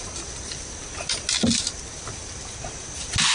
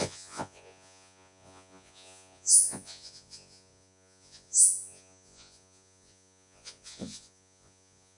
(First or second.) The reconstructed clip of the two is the second